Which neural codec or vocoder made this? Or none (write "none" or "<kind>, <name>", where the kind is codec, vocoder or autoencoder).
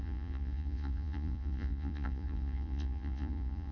vocoder, Vocos